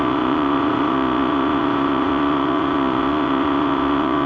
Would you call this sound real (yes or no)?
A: no